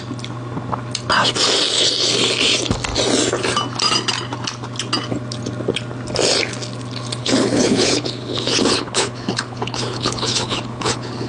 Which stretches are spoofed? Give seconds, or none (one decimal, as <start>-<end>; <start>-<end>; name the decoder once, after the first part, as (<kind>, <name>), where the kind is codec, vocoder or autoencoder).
7.2-11.3 (codec, HILCodec)